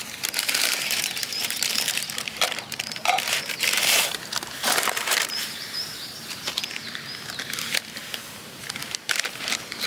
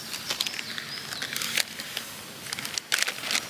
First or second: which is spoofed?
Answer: first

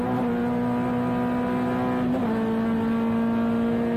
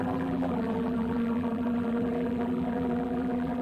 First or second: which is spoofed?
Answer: second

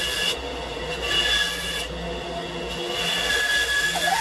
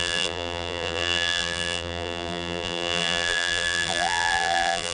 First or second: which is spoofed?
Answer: second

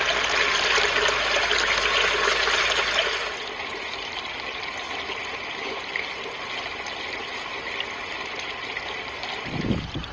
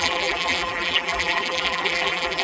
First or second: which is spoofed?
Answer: second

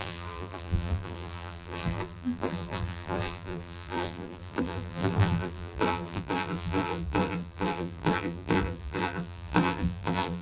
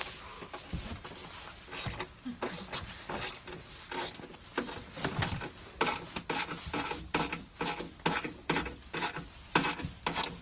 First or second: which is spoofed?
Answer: first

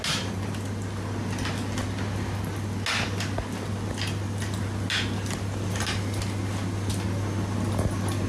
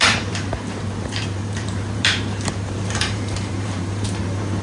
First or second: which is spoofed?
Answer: second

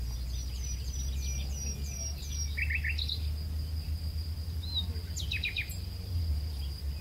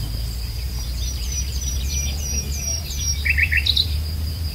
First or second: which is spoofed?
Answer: second